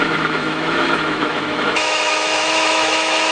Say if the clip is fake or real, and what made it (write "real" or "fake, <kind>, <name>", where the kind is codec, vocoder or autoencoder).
fake, autoencoder, DAC-VAE